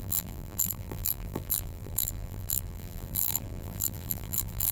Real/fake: fake